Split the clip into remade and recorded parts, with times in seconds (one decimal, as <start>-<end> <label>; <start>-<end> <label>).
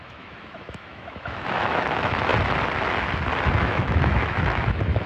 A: 0.0-2.3 remade; 2.3-3.5 recorded; 3.5-5.1 remade